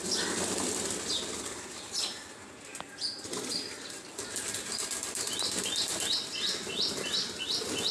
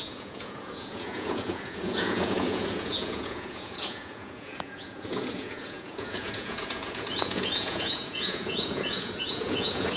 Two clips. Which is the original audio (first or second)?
first